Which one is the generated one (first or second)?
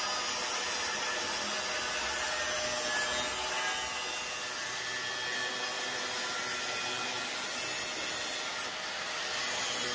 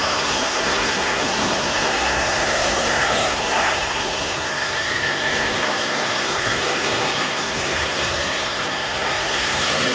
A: second